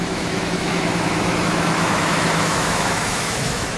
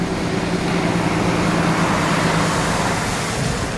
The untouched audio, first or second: second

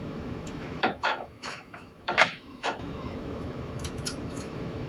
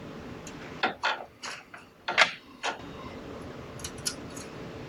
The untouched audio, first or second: second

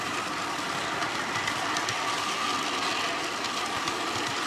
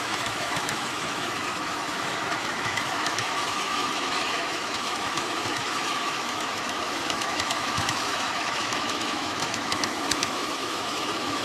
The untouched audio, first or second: first